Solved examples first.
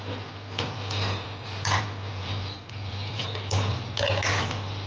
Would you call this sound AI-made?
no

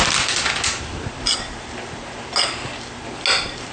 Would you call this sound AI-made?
no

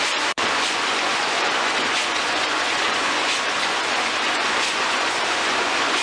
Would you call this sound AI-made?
yes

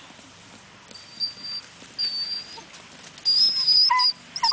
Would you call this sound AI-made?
no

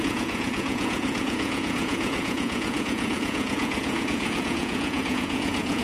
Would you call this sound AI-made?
yes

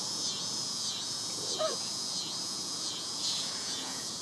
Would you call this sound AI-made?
yes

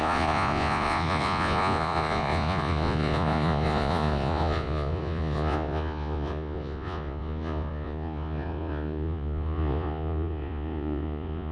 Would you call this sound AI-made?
yes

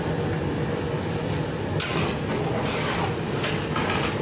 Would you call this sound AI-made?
no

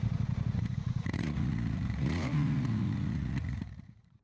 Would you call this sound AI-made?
yes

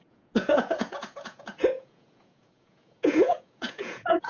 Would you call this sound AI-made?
yes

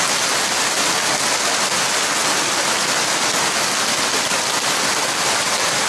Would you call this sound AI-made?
no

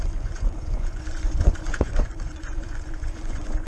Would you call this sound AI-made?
yes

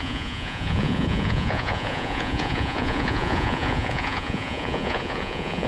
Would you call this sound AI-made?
yes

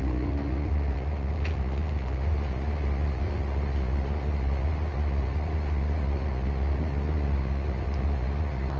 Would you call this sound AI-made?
yes